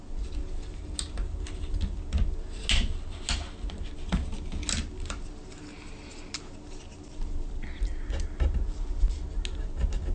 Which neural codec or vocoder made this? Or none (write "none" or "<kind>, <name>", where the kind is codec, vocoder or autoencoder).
none